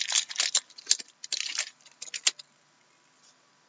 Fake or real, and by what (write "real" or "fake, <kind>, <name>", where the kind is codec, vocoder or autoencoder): real